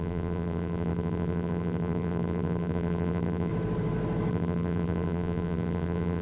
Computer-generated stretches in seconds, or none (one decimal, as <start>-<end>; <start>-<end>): 0.0-3.5; 4.3-6.2